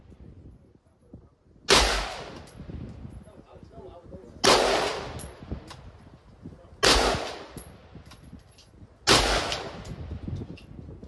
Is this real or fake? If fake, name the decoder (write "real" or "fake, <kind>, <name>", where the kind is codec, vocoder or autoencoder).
real